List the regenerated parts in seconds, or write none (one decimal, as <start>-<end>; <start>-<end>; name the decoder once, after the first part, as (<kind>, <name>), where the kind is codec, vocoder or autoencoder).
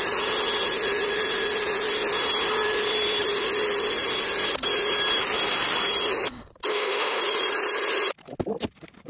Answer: 6.7-7.2 (autoencoder, DAC-VAE)